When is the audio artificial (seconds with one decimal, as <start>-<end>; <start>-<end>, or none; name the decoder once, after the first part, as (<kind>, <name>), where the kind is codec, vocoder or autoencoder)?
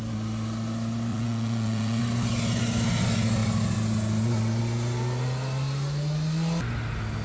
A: 1.1-2.0 (vocoder, Vocos)